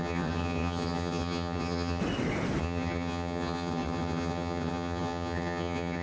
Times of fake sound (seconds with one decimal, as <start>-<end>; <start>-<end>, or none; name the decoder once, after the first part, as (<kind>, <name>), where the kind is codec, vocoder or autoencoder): 0.0-2.0 (vocoder, HiFi-GAN); 2.6-6.0